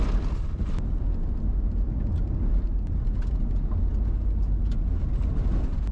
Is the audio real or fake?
real